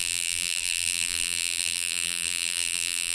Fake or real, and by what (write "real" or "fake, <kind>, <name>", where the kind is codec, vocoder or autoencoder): fake, vocoder, BigVGAN v2